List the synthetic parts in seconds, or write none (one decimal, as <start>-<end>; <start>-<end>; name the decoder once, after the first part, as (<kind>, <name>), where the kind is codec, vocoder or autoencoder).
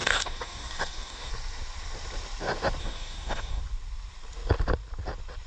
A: 0.0-1.3 (codec, DAC); 2.8-3.6